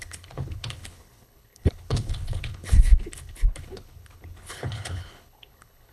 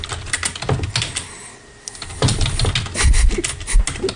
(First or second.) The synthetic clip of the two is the first